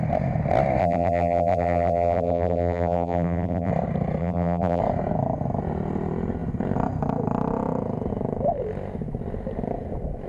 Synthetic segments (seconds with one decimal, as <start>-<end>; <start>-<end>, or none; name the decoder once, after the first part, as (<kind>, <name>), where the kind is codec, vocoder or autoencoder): 0.8-3.7 (vocoder, BigVGAN v2); 4.2-4.8

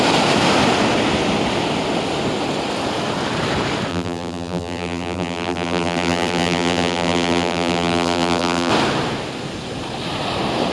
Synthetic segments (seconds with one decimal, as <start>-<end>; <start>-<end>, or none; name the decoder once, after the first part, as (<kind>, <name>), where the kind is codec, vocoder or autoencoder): 3.9-8.7 (vocoder, BigVGAN v2)

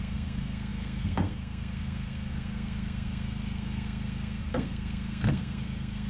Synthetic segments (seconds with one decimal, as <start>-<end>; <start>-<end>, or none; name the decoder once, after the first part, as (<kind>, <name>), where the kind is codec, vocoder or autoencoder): 0.0-6.1 (codec, SNAC)